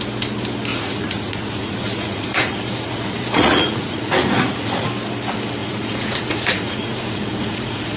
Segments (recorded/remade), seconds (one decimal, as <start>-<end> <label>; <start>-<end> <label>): 0.0-0.7 recorded; 0.7-4.9 remade; 4.9-5.6 recorded; 5.6-8.0 remade